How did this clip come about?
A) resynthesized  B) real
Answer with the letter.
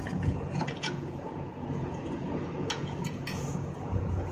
A